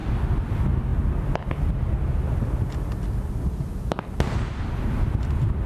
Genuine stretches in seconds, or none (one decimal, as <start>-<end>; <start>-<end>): 0.0-5.7